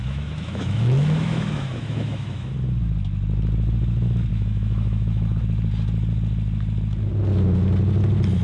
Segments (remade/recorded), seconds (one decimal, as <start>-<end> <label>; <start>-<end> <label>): 0.0-2.5 remade; 2.5-4.3 recorded; 4.3-5.4 remade; 5.4-8.4 recorded